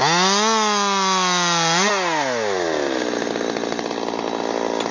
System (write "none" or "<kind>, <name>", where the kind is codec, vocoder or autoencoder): none